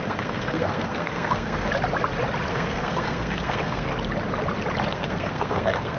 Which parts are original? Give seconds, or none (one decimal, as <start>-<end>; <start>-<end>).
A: 1.7-2.5; 3.9-4.9